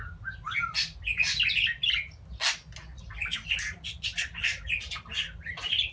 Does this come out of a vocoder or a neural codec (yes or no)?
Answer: no